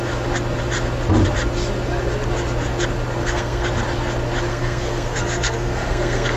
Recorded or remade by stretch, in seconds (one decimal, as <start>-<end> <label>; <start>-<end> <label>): 0.0-3.2 recorded; 3.2-3.7 remade; 3.7-4.5 recorded; 4.5-6.4 remade